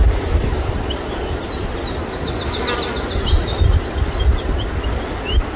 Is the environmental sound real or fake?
real